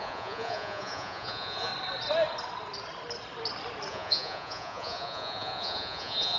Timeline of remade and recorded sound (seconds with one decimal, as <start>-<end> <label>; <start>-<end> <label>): 0.0-1.7 remade; 1.7-3.9 recorded; 3.9-6.4 remade